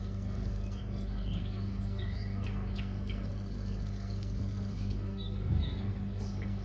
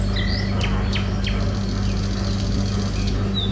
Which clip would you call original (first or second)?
second